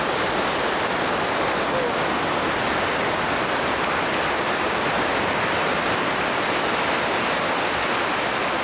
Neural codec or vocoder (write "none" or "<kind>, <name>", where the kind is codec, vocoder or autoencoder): none